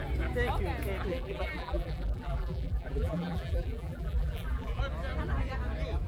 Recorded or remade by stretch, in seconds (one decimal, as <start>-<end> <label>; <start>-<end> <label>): 0.0-1.1 recorded; 1.1-4.8 remade; 4.8-6.1 recorded